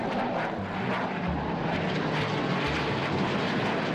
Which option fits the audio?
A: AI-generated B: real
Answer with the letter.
B